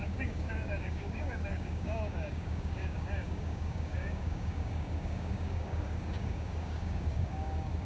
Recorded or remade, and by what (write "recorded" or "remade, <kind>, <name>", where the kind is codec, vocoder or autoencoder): remade, codec, DAC